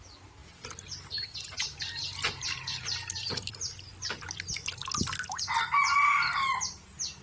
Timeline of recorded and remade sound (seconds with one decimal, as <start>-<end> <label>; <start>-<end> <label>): 0.0-7.2 recorded